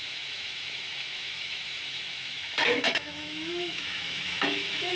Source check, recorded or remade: remade